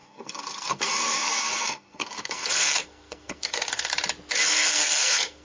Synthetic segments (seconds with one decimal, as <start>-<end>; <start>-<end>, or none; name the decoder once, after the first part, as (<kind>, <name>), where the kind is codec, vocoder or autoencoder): 0.0-3.9 (codec, SNAC); 4.5-5.4